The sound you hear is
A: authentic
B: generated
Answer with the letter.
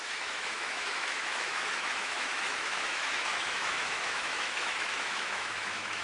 B